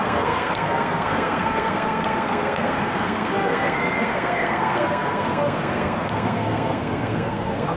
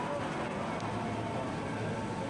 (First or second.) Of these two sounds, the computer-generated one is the first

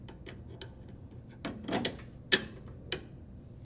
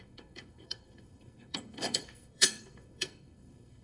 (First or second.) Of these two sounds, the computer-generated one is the second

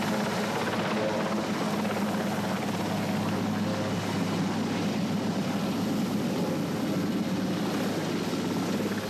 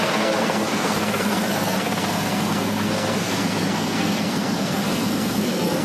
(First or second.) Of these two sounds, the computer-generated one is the second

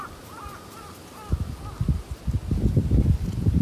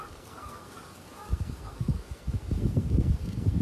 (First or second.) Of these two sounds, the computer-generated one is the second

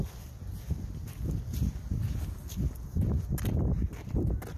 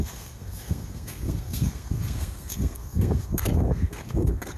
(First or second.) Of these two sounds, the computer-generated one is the second